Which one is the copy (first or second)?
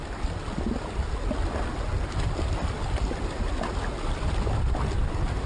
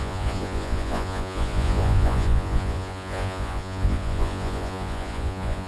second